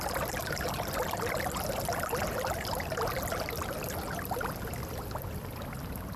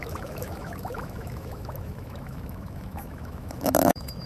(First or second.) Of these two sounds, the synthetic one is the second